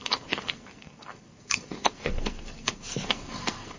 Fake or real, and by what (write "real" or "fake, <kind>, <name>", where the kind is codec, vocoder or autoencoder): fake, codec, SNAC